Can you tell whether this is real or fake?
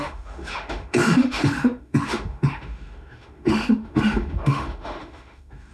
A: fake